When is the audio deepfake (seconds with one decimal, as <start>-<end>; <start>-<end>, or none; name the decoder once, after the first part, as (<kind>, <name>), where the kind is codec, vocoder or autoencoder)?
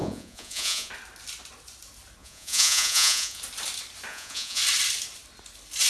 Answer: 0.0-0.9 (vocoder, Vocos); 2.2-3.4; 4.1-4.6